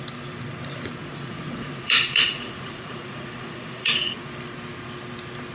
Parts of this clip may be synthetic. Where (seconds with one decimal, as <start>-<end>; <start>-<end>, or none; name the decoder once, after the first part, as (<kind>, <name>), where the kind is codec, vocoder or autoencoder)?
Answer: 1.0-4.2 (vocoder, Vocos)